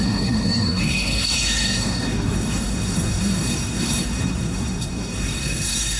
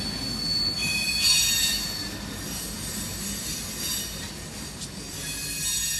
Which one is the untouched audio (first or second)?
second